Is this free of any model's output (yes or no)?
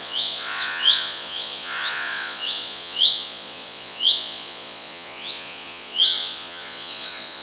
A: no